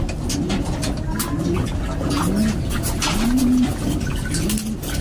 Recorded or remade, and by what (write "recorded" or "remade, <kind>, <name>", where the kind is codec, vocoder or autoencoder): recorded